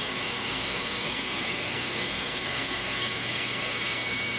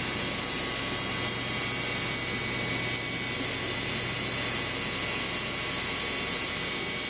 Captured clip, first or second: second